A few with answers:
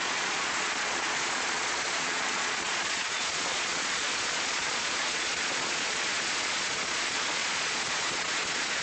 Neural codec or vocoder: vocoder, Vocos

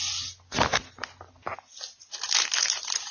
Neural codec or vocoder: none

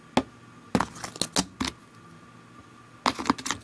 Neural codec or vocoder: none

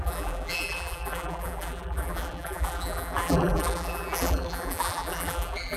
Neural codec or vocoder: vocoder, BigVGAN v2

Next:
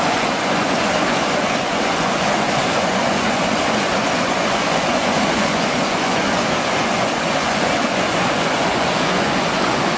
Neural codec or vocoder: vocoder, Vocos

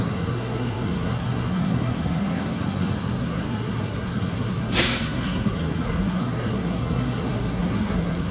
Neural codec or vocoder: codec, SNAC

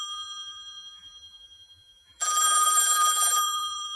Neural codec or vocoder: vocoder, BigVGAN v2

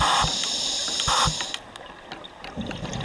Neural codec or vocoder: none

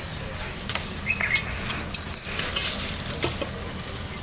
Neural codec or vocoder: none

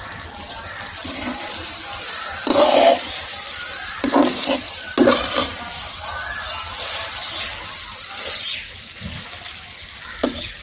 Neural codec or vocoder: none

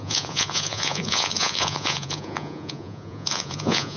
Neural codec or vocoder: vocoder, Vocos